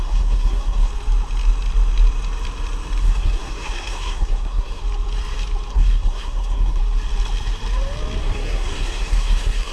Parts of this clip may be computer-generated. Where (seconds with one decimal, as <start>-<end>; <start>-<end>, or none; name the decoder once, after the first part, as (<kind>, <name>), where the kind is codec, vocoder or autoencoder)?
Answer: 0.0-0.9 (codec, SNAC); 3.0-4.8; 5.7-6.8; 8.2-9.7